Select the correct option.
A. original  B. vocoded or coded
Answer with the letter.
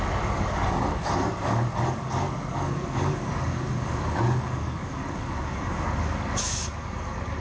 B